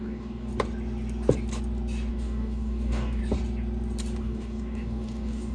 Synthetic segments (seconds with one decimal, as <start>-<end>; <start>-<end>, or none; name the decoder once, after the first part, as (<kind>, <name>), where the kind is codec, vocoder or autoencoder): 0.0-0.5 (codec, DAC); 2.1-3.2; 4.2-5.5